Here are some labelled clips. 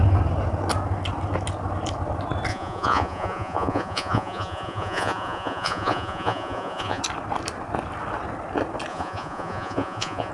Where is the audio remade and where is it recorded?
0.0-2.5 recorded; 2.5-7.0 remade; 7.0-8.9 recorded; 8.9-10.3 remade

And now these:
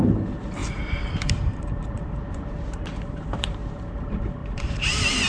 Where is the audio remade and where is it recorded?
0.0-0.6 recorded; 0.6-3.8 remade; 3.8-4.4 recorded; 4.4-5.3 remade

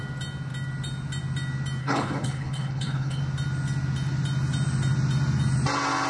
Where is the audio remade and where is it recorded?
0.0-1.8 recorded; 1.8-3.2 remade; 3.2-6.1 recorded